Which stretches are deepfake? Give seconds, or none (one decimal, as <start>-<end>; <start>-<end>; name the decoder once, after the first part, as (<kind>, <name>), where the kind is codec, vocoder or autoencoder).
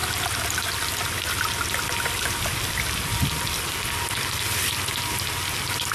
none